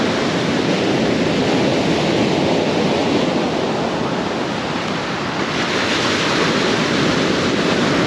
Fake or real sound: real